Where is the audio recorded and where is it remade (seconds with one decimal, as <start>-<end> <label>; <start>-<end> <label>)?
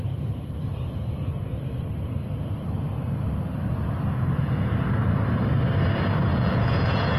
0.0-6.3 recorded; 6.3-7.2 remade